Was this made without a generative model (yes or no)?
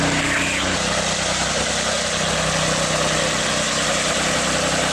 yes